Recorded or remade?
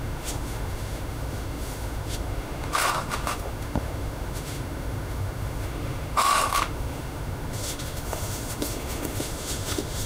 remade